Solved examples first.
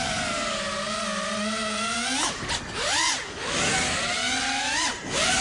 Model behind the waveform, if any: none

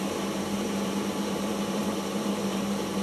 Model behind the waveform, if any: vocoder, BigVGAN v2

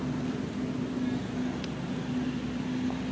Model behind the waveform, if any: none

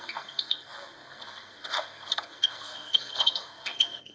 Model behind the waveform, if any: codec, SNAC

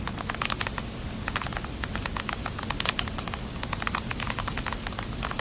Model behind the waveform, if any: none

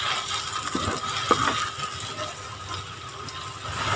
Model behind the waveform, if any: none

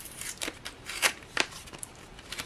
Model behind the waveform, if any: vocoder, BigVGAN v2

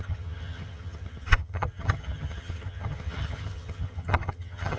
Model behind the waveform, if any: vocoder, HiFi-GAN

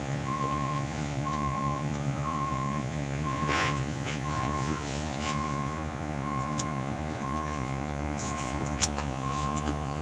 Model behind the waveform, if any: vocoder, Vocos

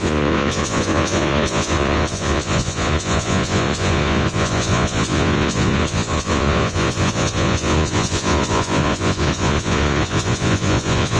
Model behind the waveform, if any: vocoder, Vocos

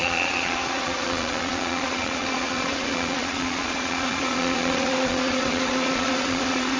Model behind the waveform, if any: vocoder, Vocos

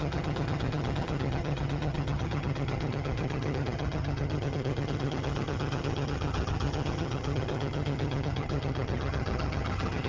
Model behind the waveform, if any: vocoder, HiFi-GAN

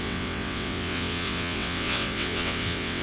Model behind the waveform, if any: vocoder, WaveNeXt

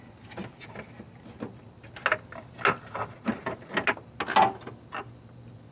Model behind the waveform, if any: none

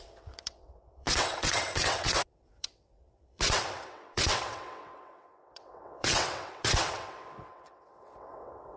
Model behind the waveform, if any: vocoder, WaveNeXt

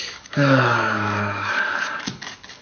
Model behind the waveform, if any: codec, DAC